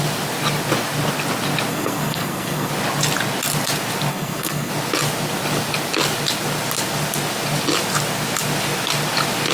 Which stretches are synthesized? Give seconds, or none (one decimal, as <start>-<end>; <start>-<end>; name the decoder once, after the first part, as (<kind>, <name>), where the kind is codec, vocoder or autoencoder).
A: 1.7-2.7 (codec, SNAC); 4.1-4.7